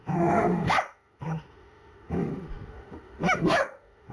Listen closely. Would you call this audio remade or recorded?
remade